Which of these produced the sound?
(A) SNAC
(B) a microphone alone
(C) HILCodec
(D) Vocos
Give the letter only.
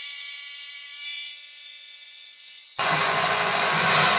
D